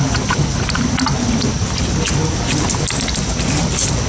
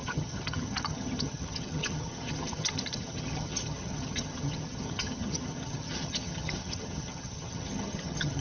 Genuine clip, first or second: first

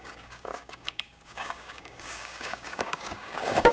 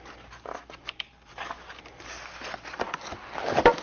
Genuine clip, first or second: second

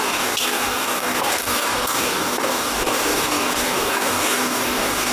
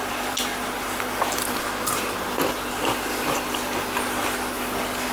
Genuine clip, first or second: second